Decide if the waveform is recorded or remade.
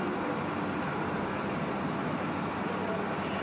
recorded